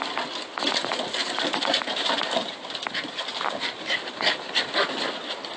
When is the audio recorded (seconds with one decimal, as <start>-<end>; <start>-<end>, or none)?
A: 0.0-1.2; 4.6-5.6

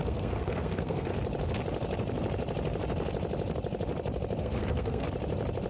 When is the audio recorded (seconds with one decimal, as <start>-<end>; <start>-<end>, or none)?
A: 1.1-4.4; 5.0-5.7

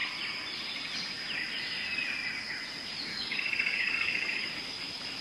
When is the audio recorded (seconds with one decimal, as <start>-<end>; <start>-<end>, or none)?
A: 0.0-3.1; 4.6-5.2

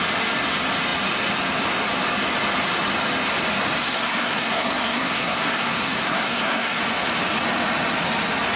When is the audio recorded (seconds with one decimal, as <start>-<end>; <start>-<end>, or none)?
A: 0.0-3.8; 6.8-8.6